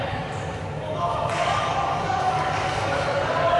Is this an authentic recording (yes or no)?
no